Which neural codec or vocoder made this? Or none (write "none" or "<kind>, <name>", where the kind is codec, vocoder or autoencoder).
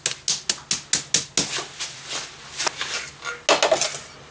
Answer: none